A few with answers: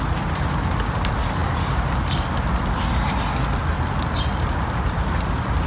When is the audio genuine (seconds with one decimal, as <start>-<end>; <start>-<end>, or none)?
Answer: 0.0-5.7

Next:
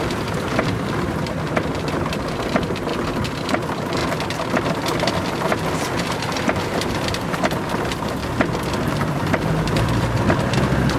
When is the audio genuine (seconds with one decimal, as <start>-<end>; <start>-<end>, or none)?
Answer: 2.9-3.5; 4.0-4.8; 8.2-8.8

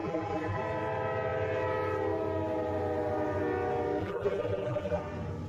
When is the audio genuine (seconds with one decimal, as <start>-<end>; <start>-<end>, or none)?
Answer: 0.6-4.0; 5.0-5.5

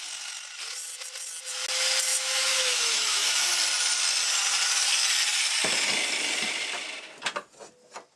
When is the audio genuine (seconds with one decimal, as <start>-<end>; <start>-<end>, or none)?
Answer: 0.0-2.1; 3.5-8.2

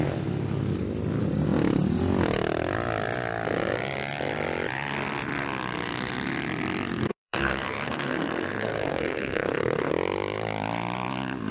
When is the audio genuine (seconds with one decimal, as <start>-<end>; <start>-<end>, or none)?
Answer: 0.0-7.1; 9.9-11.5

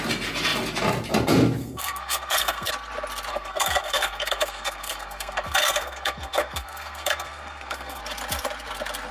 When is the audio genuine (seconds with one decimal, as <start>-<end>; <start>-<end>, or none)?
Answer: 0.0-1.6; 2.7-3.3; 8.0-9.1